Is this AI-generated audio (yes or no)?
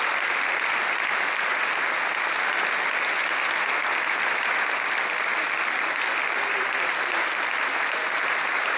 no